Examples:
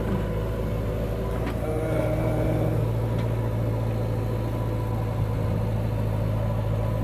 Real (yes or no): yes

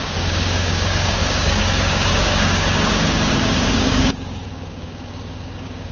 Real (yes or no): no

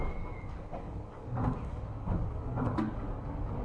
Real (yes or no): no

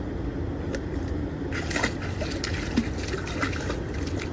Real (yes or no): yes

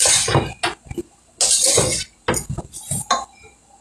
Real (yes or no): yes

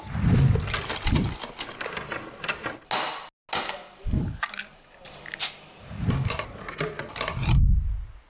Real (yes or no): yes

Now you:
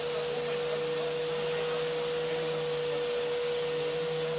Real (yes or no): yes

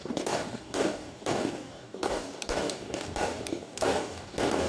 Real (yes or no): no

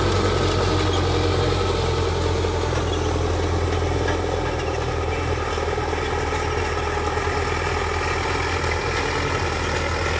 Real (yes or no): yes